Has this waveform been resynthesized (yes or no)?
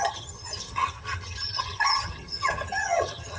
yes